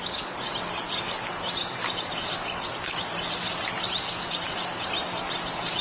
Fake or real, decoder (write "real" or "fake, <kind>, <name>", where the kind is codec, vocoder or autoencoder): real